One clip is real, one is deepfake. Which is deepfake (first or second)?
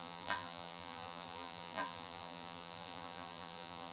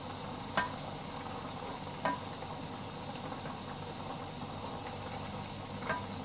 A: first